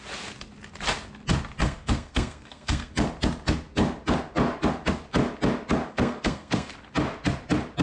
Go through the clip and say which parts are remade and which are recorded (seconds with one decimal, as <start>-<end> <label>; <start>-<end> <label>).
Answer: 0.0-1.6 recorded; 1.6-2.9 remade; 2.9-5.9 recorded; 5.9-6.7 remade; 6.7-7.8 recorded